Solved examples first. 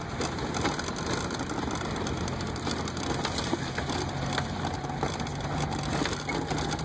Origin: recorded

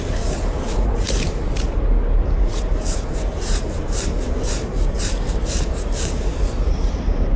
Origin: remade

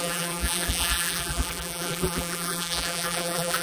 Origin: remade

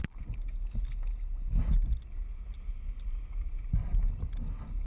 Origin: recorded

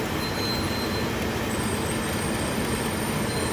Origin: recorded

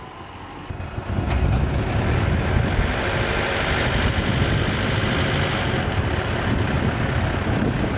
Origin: recorded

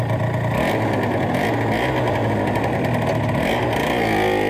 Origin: recorded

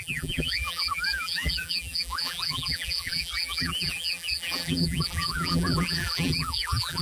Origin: remade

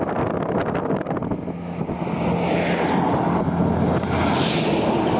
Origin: recorded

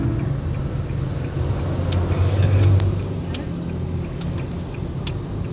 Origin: recorded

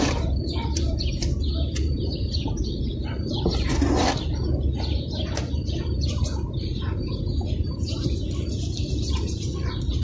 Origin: remade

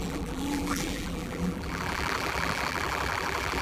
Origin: remade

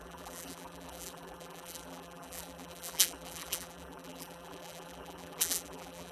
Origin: remade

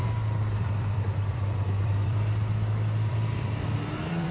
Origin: remade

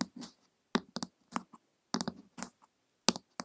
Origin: recorded